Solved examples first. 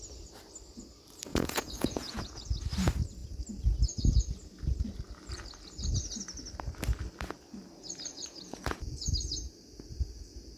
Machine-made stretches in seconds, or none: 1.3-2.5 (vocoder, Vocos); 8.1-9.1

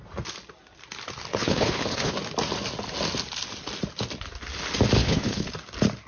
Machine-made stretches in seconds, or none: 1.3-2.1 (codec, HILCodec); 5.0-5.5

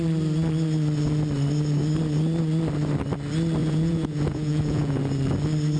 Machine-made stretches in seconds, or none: 3.6-5.0 (vocoder, Vocos)

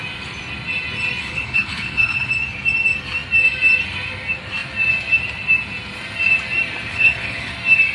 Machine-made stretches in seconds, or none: 1.2-2.3 (codec, HILCodec); 6.9-7.5

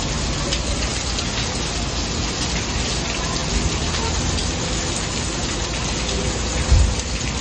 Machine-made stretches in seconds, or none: none